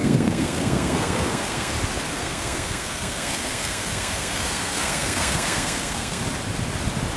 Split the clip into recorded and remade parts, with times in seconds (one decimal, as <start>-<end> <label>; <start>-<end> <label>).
0.0-1.7 remade; 1.7-2.2 recorded; 2.2-6.2 remade; 6.2-7.2 recorded